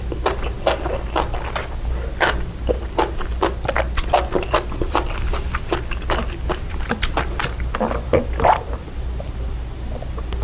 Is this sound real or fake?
real